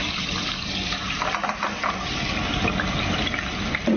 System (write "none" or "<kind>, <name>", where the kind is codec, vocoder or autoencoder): none